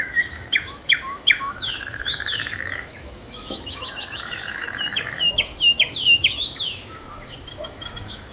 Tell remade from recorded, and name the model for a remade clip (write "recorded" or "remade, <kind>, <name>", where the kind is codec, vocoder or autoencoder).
remade, autoencoder, DAC-VAE